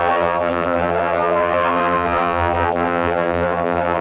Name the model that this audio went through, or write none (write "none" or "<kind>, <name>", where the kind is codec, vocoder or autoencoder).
vocoder, BigVGAN v2